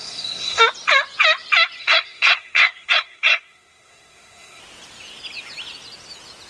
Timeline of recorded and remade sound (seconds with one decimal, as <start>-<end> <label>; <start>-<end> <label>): 0.0-0.6 remade; 0.6-1.8 recorded; 1.8-4.6 remade; 4.6-6.5 recorded